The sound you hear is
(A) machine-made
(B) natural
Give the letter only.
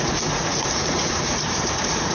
A